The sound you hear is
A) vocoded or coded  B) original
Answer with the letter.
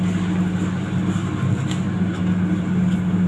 B